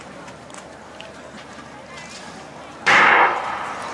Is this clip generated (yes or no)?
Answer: no